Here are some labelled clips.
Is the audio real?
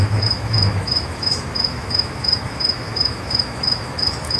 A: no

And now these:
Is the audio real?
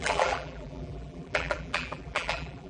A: no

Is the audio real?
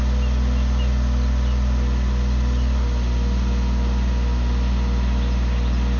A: yes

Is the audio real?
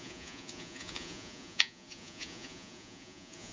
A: no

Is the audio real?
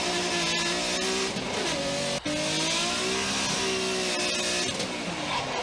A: yes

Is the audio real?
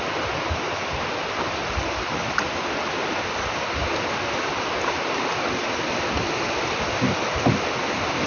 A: yes